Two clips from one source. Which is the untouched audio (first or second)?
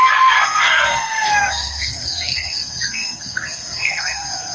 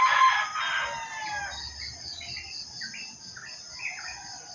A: second